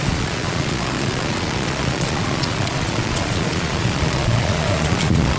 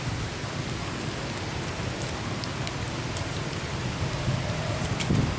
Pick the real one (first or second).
second